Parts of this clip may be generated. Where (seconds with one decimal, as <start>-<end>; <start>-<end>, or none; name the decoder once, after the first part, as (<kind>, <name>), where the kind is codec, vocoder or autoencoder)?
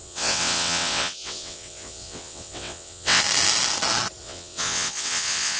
0.0-3.2 (vocoder, WaveNeXt); 4.2-5.6